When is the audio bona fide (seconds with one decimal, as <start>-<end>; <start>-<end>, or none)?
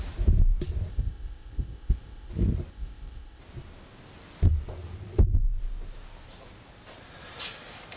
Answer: 0.0-0.9; 2.3-2.7; 3.4-8.0